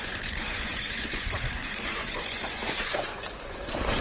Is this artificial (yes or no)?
yes